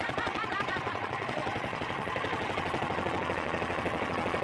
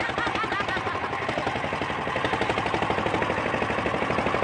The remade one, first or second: first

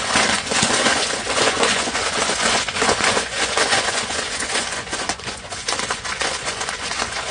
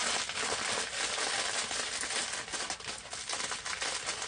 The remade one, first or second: first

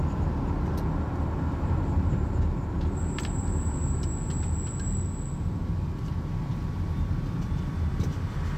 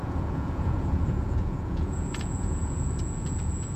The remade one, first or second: second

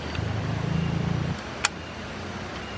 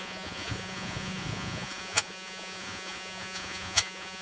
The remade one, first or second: second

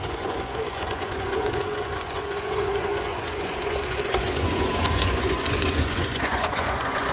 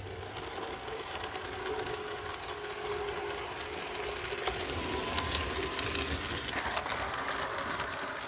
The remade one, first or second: first